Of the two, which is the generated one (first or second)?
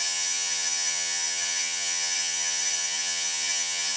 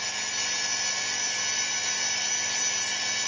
first